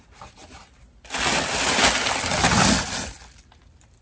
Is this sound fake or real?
real